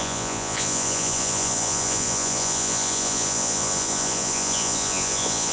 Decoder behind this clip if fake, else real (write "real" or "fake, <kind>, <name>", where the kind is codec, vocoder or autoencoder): fake, vocoder, Vocos